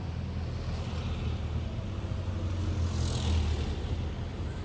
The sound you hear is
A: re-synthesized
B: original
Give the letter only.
B